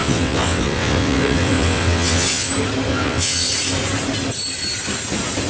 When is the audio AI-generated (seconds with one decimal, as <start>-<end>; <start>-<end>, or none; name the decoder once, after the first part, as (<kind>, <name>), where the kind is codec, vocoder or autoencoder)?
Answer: 0.0-2.5 (vocoder, WaveNeXt); 2.9-3.5